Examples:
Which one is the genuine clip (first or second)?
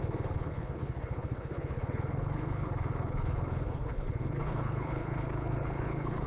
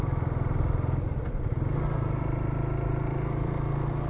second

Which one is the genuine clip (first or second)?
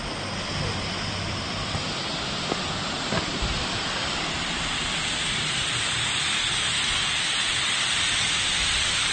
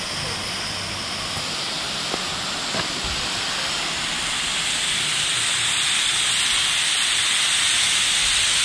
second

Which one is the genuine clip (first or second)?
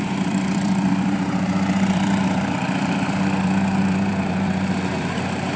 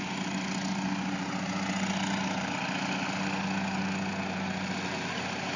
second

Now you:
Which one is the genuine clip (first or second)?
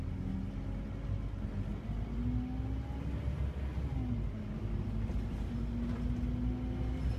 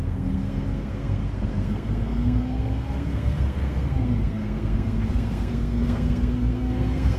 first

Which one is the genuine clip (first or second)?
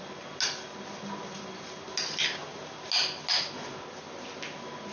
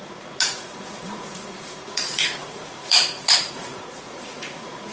first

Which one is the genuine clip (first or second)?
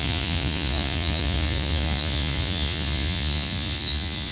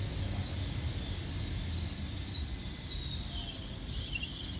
second